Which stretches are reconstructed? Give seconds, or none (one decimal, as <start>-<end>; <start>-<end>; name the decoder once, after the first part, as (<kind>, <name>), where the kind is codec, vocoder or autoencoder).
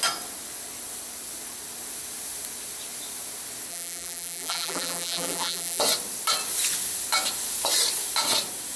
3.7-5.8 (vocoder, BigVGAN v2)